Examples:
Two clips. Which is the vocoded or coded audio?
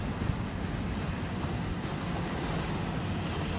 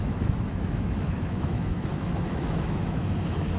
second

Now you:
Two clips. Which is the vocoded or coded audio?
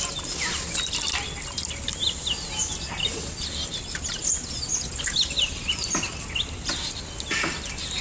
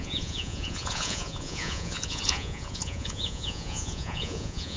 second